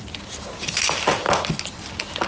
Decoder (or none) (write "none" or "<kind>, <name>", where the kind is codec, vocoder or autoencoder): none